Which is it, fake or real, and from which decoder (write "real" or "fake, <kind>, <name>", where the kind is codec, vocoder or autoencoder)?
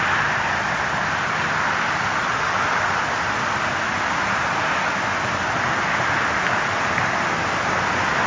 real